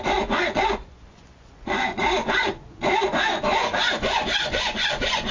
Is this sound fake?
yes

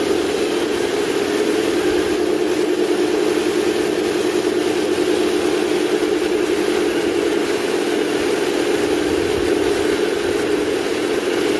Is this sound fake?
no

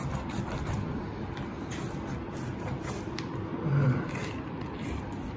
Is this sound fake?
no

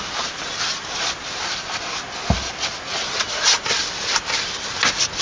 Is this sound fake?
no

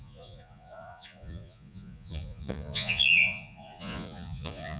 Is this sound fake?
yes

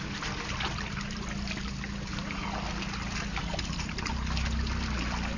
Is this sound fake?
no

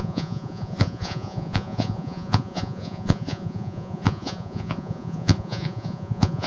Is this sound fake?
yes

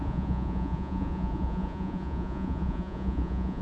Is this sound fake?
yes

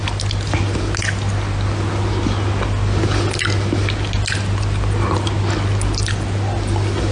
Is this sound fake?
no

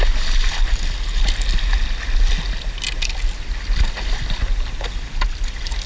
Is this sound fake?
no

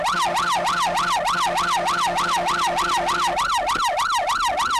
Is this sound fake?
no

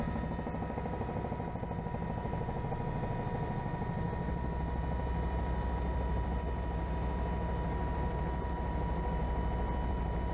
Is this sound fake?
no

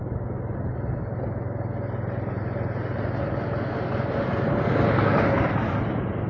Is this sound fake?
no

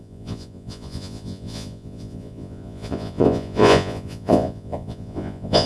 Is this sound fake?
yes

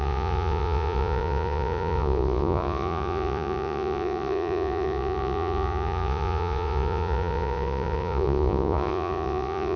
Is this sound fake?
yes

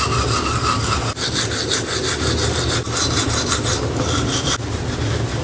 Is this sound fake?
no